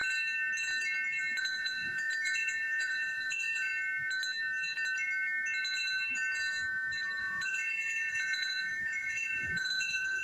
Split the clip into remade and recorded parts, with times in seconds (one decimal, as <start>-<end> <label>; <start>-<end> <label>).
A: 0.0-1.4 recorded; 1.4-3.7 remade; 3.7-7.2 recorded; 7.2-10.2 remade